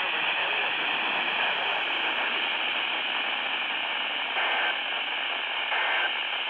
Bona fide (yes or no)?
yes